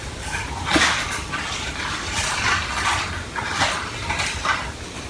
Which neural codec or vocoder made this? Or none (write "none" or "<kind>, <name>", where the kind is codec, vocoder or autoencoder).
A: none